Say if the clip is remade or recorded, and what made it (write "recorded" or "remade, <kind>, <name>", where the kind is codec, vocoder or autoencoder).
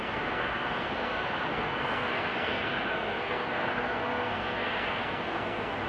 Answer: remade, codec, SNAC